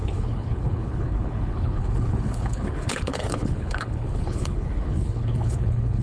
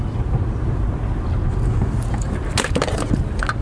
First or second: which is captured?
second